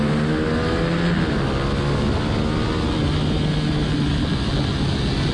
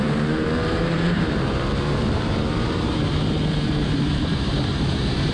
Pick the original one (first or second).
first